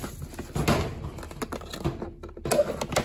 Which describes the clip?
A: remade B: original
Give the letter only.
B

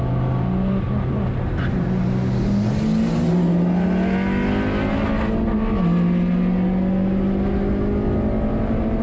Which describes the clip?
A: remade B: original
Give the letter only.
B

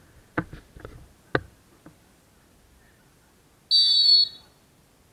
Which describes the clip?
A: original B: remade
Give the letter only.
A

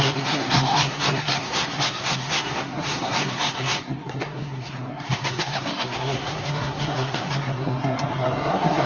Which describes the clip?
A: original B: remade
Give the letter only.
B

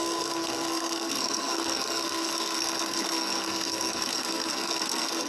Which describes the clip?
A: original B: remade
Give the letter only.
B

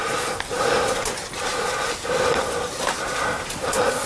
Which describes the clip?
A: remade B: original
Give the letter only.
B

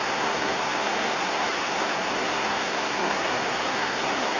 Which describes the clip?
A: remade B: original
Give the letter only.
A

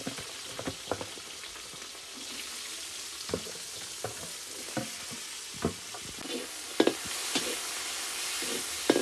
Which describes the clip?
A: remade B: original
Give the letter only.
B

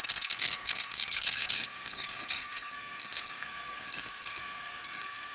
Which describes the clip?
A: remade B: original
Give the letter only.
A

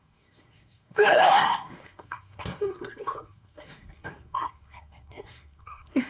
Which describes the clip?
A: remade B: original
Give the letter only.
A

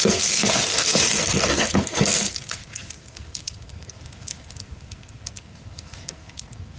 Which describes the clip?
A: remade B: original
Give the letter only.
A